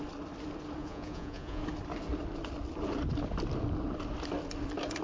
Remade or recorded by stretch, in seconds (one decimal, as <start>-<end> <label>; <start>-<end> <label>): 0.0-0.8 recorded; 0.8-1.6 remade; 1.6-5.0 recorded